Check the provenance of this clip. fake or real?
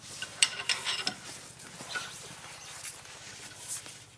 real